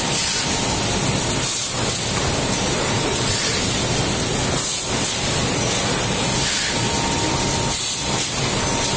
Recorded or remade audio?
recorded